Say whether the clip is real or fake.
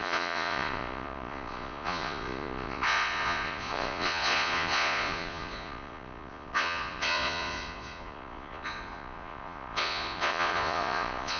fake